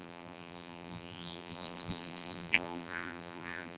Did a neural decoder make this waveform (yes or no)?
yes